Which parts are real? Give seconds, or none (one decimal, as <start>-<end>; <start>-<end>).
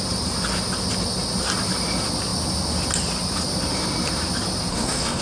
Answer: 0.0-4.7